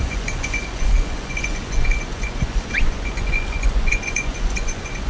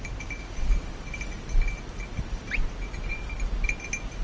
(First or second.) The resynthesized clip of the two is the first